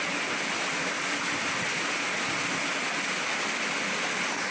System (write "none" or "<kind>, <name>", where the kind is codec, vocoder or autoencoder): none